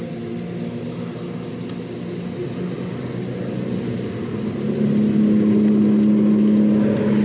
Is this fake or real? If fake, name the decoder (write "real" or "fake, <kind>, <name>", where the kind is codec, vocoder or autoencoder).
real